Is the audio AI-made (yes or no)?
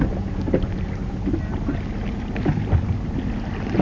no